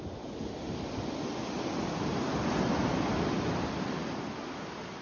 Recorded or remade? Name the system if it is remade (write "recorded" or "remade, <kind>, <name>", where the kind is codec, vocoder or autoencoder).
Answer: recorded